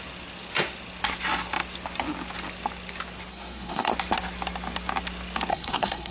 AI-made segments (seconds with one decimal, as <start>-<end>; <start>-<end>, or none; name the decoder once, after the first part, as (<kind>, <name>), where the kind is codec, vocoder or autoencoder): 3.3-3.9 (codec, SNAC); 5.5-6.1